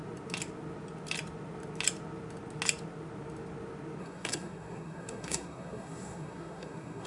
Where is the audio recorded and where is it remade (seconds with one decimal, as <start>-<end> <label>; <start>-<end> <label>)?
0.0-4.0 recorded; 4.0-7.1 remade